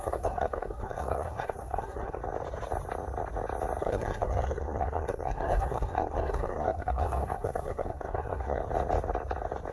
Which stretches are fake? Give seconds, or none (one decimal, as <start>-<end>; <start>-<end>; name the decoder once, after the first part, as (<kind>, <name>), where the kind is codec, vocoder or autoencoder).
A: 0.0-2.2 (codec, SNAC); 3.8-8.6